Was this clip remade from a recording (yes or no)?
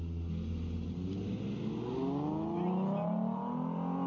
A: no